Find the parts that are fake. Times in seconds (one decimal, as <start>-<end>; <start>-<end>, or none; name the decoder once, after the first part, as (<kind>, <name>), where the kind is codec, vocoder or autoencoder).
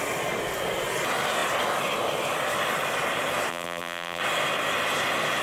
3.5-4.2 (vocoder, BigVGAN v2)